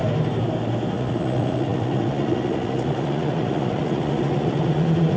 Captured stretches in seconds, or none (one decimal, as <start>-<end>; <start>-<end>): 0.0-0.9